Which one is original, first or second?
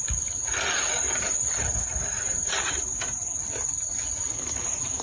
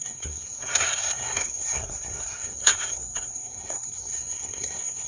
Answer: first